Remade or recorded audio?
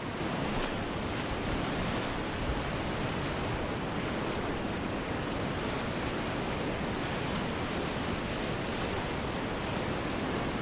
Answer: recorded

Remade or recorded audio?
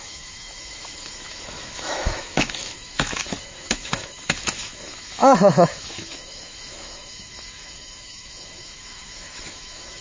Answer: remade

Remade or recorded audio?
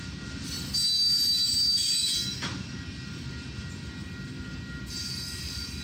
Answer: recorded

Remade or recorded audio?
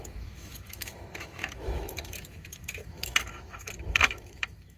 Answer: remade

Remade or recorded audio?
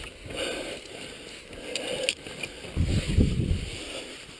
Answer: recorded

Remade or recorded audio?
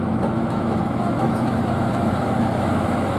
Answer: remade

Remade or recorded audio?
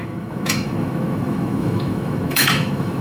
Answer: remade